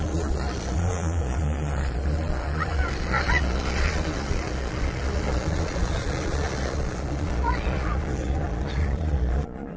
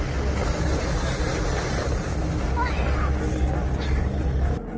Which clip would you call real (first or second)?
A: second